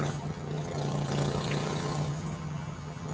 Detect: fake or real fake